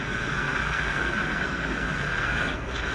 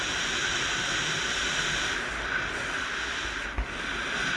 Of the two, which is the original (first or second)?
second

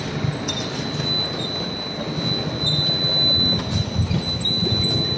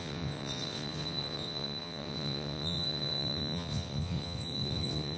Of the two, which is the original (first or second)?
first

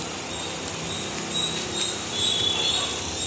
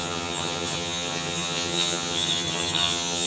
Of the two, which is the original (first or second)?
first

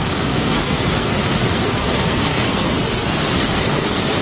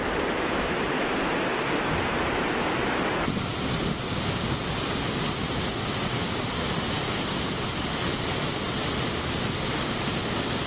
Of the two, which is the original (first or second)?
second